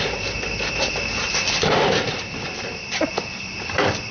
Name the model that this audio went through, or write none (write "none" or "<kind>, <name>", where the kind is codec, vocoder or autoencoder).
vocoder, BigVGAN v2